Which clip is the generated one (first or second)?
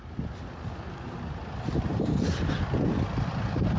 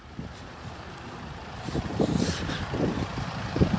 second